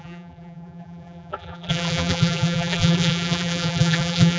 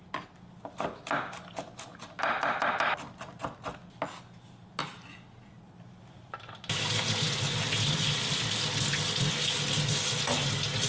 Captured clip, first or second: second